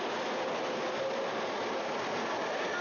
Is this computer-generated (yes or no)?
no